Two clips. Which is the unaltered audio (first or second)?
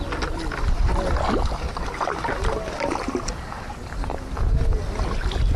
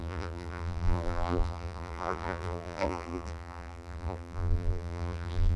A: first